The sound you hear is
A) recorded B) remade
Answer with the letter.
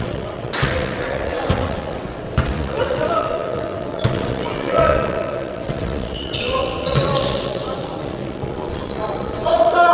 B